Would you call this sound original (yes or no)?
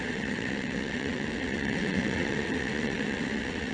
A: no